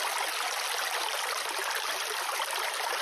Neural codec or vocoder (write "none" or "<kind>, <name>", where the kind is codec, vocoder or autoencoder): none